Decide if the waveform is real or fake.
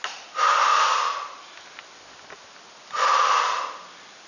real